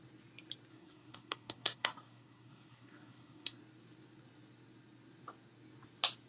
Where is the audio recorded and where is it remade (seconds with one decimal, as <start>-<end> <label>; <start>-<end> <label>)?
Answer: 0.0-0.7 recorded; 0.7-3.6 remade; 3.6-6.3 recorded